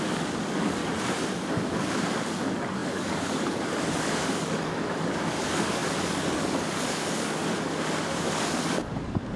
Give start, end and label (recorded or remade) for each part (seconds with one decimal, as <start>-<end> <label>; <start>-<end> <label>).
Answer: 0.0-0.8 remade; 0.8-1.5 recorded; 1.5-9.4 remade